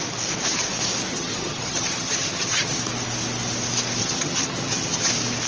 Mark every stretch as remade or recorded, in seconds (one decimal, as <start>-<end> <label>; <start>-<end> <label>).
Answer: 0.0-1.1 recorded; 1.1-2.8 remade; 2.8-4.0 recorded; 4.0-5.1 remade; 5.1-5.5 recorded

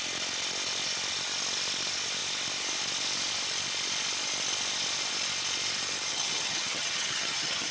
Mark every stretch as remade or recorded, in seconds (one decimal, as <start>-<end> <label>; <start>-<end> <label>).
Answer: 0.0-6.1 recorded; 6.1-7.7 remade

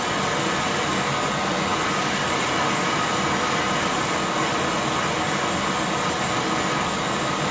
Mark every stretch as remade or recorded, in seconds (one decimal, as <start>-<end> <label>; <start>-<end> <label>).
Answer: 0.0-7.5 recorded

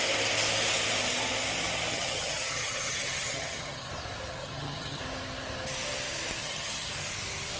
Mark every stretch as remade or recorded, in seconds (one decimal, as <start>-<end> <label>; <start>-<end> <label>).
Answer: 0.0-1.9 recorded; 1.9-3.9 remade; 3.9-4.4 recorded; 4.4-5.0 remade; 5.0-6.4 recorded; 6.4-6.9 remade; 6.9-7.6 recorded

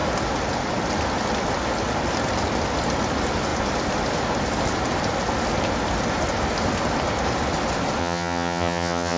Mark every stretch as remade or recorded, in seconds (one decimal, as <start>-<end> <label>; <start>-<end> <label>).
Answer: 0.0-8.0 recorded; 8.0-9.2 remade

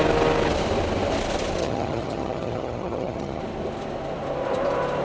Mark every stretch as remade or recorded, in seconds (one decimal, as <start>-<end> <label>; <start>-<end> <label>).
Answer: 0.0-1.6 recorded; 1.6-3.4 remade; 3.4-5.0 recorded